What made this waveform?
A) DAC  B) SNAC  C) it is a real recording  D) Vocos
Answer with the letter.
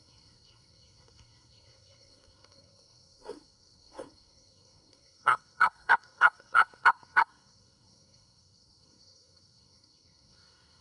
B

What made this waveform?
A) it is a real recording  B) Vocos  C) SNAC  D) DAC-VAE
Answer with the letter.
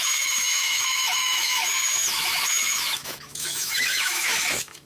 D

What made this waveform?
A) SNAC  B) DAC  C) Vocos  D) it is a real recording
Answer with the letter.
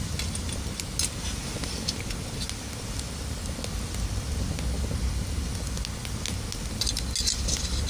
D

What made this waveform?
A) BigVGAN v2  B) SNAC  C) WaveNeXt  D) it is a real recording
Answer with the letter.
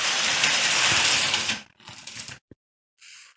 A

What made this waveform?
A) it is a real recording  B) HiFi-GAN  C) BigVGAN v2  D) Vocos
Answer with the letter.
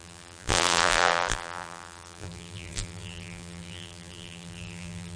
C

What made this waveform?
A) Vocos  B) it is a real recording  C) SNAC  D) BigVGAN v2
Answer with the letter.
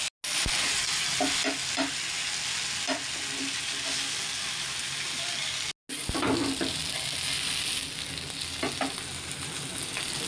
B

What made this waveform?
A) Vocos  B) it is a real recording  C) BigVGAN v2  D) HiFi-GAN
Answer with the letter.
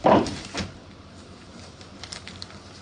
C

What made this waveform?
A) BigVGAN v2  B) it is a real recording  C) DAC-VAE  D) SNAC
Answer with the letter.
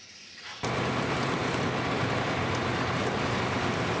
B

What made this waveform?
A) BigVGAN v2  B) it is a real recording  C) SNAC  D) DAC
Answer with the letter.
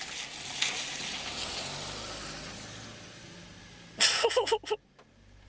B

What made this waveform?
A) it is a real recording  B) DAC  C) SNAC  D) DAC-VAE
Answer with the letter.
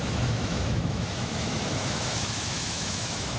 D